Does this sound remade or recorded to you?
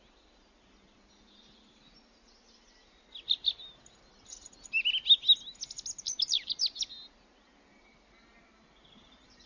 recorded